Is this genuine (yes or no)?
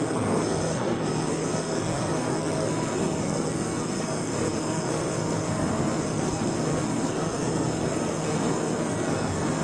no